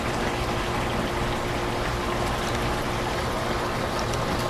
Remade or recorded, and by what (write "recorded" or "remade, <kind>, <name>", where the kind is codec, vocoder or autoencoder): recorded